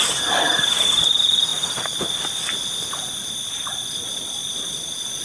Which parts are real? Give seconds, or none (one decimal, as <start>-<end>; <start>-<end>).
0.0-5.2

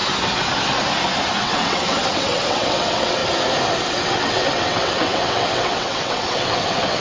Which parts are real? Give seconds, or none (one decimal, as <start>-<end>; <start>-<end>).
0.0-1.4; 3.2-3.8

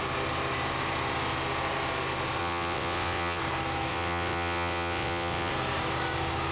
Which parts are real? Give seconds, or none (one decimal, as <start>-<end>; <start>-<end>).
0.0-2.4; 3.4-3.9; 5.5-6.5

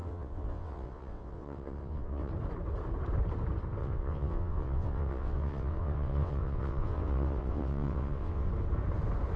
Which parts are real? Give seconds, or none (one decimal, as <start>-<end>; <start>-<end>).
2.3-3.8; 8.5-9.4

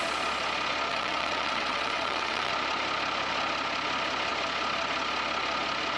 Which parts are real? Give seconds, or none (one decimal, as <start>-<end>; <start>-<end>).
0.0-0.9; 2.5-6.0